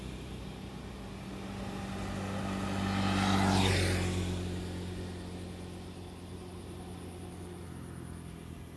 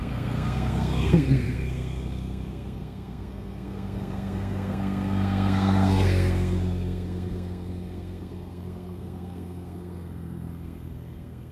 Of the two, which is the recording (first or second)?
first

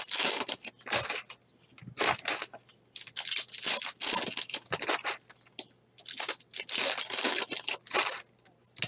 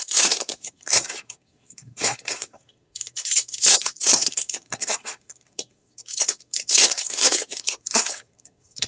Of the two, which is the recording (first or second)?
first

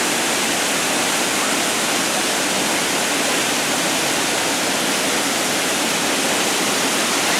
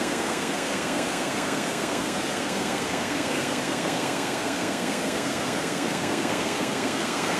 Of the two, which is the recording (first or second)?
first